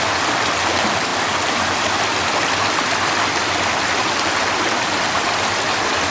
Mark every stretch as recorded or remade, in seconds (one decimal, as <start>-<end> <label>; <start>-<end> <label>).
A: 0.0-6.1 recorded